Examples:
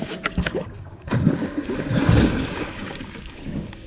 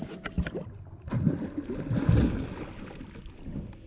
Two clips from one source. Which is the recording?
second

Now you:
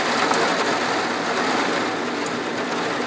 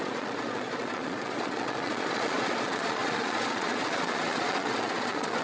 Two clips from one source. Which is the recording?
first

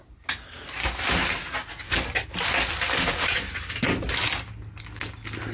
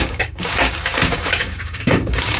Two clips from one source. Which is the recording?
first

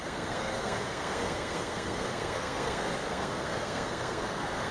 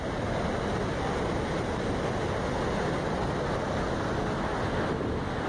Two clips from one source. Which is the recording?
second